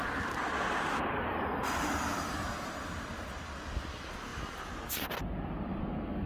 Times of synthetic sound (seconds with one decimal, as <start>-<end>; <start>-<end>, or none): 5.8-6.3